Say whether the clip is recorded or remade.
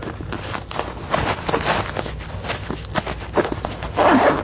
recorded